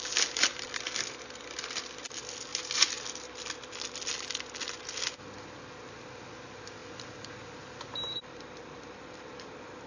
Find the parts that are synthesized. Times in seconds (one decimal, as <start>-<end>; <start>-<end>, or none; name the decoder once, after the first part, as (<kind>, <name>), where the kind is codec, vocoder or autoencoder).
none